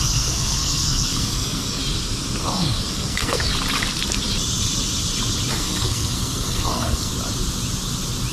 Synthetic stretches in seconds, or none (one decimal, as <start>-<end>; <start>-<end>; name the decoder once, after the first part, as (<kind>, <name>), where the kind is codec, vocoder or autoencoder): 0.0-1.8 (codec, SNAC); 2.4-3.5; 5.5-7.1